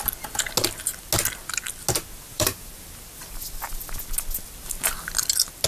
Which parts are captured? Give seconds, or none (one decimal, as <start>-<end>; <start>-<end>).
0.0-2.3; 3.1-5.7